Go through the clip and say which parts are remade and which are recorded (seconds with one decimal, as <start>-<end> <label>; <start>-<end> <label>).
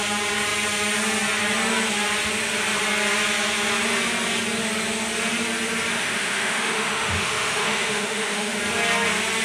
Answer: 0.0-5.9 recorded; 5.9-8.6 remade; 8.6-9.4 recorded